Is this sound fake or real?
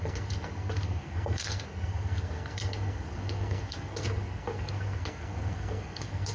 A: fake